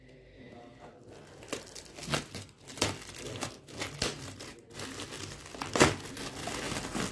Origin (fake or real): real